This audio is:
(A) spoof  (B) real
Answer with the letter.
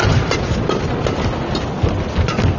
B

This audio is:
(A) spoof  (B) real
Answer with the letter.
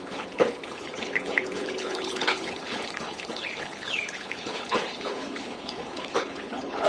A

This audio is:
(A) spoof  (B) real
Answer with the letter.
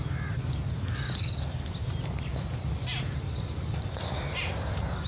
B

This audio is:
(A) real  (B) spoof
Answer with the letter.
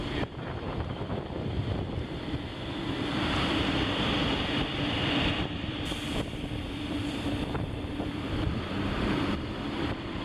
B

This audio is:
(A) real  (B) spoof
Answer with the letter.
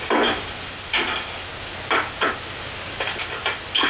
A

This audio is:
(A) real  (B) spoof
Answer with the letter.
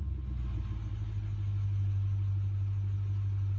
A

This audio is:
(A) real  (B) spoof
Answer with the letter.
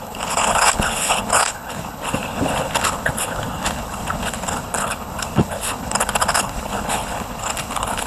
B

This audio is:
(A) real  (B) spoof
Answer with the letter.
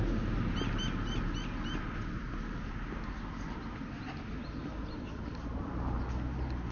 A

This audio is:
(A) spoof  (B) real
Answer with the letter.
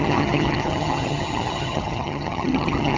A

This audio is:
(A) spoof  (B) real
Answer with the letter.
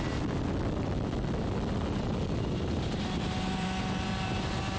B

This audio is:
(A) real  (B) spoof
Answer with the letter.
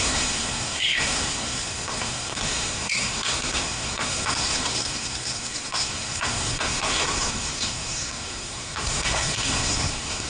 B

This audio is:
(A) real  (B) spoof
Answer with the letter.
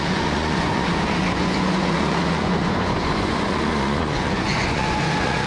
B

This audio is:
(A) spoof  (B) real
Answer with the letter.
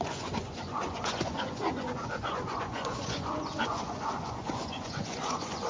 A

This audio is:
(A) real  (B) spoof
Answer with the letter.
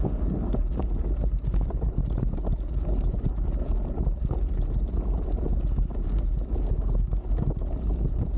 A